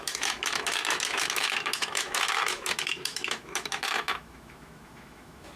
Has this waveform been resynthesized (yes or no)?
yes